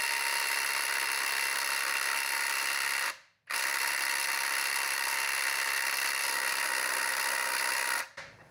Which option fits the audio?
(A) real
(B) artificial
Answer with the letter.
A